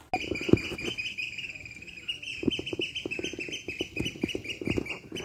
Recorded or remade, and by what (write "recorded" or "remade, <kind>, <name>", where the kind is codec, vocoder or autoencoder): recorded